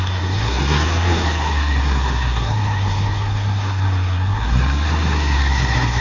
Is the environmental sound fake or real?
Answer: fake